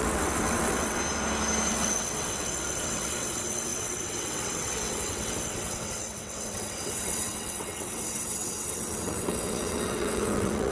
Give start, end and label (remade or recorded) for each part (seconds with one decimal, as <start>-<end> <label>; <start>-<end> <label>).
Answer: 0.0-1.0 remade; 1.0-1.7 recorded; 1.7-10.7 remade